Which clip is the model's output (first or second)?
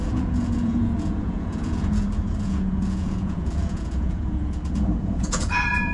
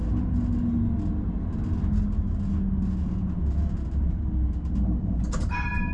first